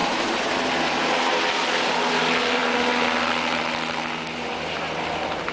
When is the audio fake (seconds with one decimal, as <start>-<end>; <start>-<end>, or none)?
0.0-0.8